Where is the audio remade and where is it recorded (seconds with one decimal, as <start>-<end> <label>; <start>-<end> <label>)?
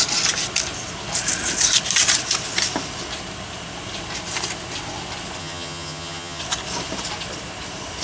0.0-5.4 recorded; 5.4-6.4 remade; 6.4-8.0 recorded